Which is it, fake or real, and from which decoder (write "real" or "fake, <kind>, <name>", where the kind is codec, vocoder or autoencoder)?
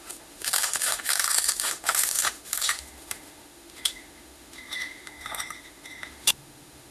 fake, autoencoder, DAC-VAE